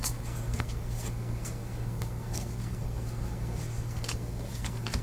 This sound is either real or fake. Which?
fake